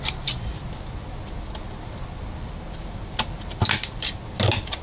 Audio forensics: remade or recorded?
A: recorded